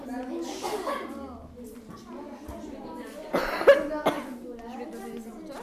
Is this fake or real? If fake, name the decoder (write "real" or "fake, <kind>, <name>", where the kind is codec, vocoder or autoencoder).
real